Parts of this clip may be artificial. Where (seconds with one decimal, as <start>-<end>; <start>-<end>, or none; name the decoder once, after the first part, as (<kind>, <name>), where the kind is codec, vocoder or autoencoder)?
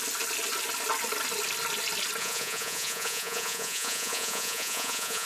2.2-5.3 (vocoder, Vocos)